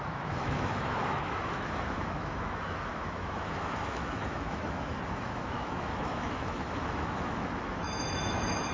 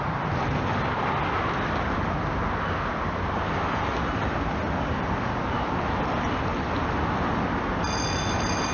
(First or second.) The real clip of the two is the second